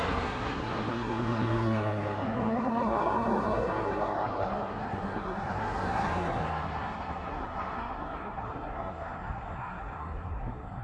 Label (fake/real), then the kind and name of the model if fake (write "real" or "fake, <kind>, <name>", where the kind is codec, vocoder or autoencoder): fake, codec, SNAC